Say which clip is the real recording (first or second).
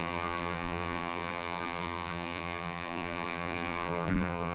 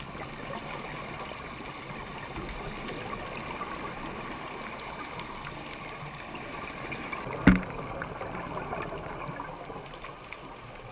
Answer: second